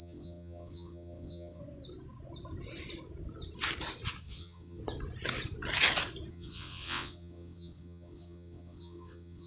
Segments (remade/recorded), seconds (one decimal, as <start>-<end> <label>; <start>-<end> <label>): 0.0-1.6 remade; 1.6-4.2 recorded; 4.2-4.8 remade; 4.8-6.3 recorded; 6.3-9.5 remade